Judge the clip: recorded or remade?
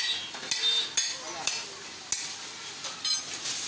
recorded